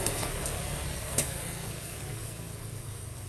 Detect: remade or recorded remade